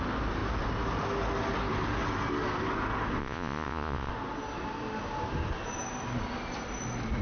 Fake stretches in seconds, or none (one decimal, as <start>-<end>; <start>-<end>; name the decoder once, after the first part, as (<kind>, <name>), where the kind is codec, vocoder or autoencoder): 3.2-4.1 (vocoder, Vocos)